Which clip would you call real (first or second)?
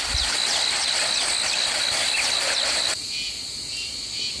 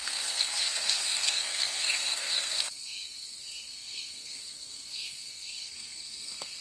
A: first